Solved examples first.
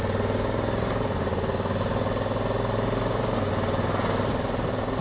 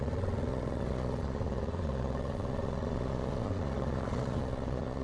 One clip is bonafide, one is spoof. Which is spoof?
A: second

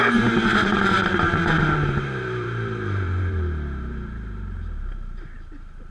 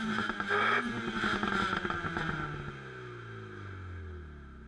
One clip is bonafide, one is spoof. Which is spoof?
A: first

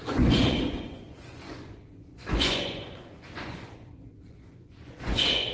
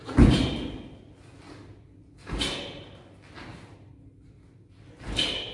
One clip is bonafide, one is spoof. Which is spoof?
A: first